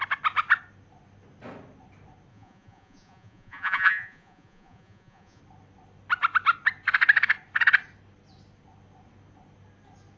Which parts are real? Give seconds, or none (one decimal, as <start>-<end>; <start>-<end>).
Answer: 0.0-2.3; 5.4-10.2